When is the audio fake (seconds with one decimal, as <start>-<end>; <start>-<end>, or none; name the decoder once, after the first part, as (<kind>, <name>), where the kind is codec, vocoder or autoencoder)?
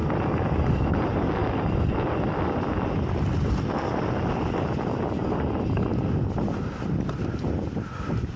none